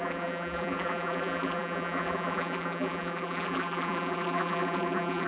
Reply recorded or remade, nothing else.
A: remade